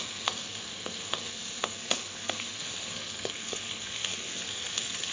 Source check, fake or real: fake